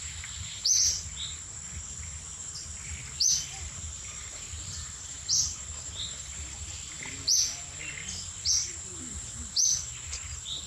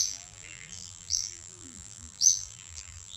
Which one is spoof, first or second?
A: second